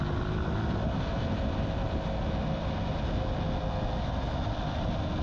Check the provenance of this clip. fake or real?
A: real